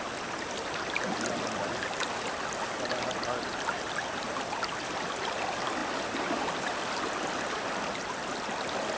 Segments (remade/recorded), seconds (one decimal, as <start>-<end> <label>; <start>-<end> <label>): 0.0-9.0 recorded